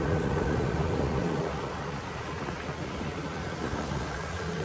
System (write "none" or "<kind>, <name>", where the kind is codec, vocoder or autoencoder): vocoder, Vocos